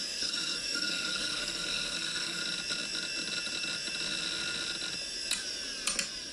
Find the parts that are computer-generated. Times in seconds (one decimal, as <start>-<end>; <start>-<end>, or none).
0.0-2.4